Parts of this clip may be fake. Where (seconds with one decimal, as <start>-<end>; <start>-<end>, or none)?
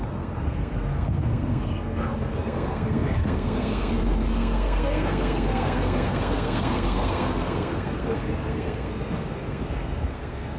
0.0-10.6